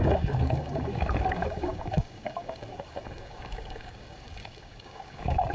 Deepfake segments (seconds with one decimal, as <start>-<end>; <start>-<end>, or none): 0.0-5.5